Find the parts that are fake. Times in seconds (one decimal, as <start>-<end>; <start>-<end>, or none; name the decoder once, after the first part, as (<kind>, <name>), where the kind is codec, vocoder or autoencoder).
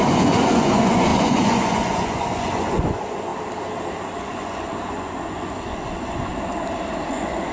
0.0-3.3 (vocoder, Vocos); 4.2-6.3; 7.1-7.5